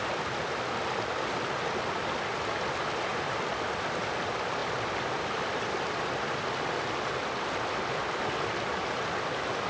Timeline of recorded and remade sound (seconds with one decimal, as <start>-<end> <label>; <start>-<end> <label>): 0.0-9.7 recorded